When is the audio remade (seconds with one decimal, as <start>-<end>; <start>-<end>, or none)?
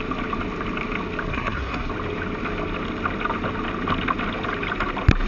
1.3-1.9